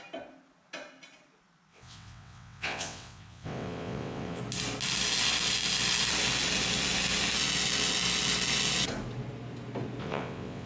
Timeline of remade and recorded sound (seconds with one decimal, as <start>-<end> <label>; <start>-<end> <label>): 0.0-1.7 recorded; 1.7-4.4 remade; 4.4-10.0 recorded; 10.0-10.7 remade